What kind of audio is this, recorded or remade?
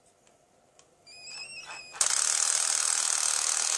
recorded